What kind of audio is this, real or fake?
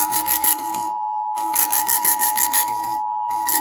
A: fake